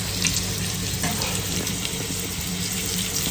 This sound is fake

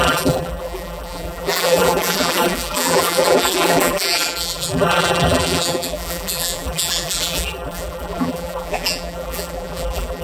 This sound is fake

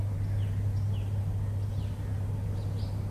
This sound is real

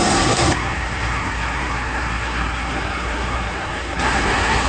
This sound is fake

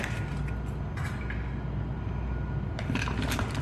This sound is real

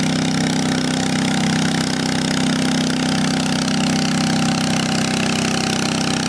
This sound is real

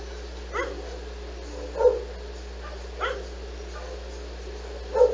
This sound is real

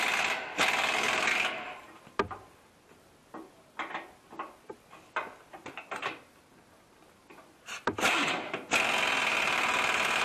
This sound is real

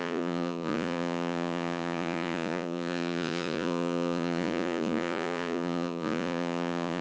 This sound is fake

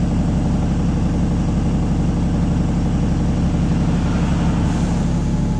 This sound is real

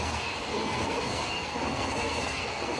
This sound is fake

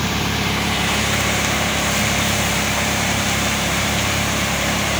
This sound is fake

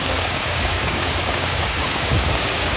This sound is fake